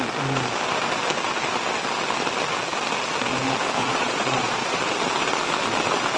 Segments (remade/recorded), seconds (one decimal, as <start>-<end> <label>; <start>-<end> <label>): 0.0-3.8 recorded; 3.8-4.8 remade; 4.8-6.2 recorded